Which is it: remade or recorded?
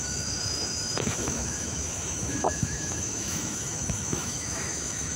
remade